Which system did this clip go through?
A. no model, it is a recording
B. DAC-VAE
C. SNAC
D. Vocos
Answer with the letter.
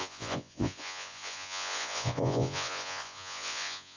D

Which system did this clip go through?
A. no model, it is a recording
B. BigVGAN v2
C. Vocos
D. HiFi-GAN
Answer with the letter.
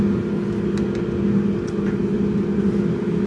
A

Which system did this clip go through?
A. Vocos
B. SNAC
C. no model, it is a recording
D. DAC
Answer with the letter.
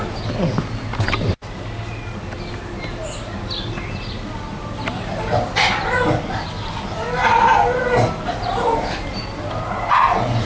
C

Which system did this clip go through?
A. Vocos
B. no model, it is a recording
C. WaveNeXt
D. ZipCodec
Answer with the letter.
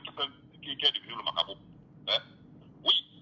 B